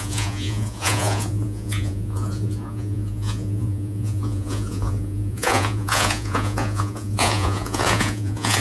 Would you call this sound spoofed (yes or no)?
yes